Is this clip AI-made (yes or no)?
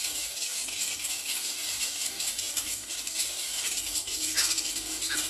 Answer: yes